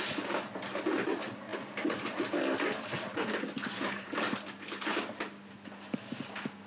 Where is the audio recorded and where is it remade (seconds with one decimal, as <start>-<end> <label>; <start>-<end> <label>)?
0.0-6.7 recorded